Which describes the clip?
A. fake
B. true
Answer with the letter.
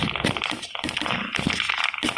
B